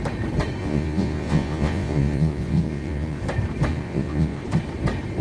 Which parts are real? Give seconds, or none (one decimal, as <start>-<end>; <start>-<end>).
0.0-0.6; 3.2-3.7; 4.4-5.2